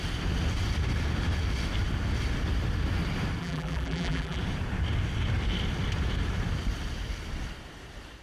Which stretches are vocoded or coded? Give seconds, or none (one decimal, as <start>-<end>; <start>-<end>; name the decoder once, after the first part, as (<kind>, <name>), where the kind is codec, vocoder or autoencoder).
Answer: 3.4-4.4 (vocoder, BigVGAN v2)

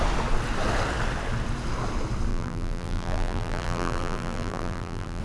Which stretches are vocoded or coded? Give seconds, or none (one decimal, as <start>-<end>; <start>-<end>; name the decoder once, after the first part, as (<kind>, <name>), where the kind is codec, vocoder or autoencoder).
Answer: 2.3-5.2 (vocoder, BigVGAN v2)

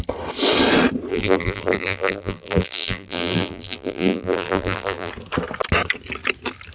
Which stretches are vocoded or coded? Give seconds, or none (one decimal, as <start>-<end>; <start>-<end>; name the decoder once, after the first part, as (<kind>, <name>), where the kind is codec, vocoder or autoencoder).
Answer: 1.1-5.1 (vocoder, BigVGAN v2)